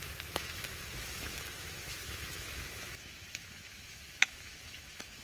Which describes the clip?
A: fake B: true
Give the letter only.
A